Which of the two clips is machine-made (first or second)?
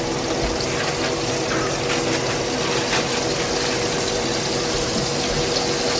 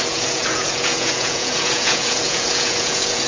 second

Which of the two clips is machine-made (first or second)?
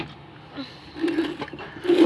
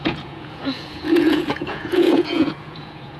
second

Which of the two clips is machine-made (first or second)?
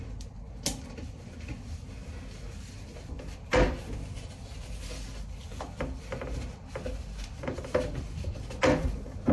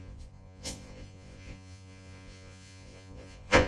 second